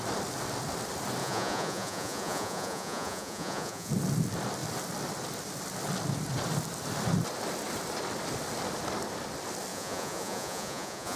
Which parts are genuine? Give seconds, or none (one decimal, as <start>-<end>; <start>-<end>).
0.0-1.2; 3.9-9.7